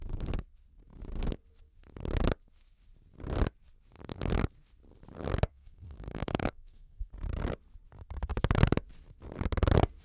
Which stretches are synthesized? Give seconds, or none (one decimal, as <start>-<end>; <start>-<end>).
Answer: 5.5-7.1